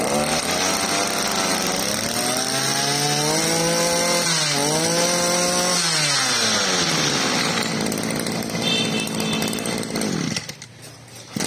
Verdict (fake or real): real